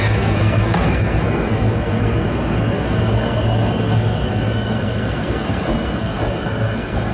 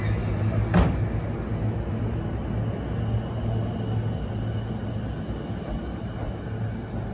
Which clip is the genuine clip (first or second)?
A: second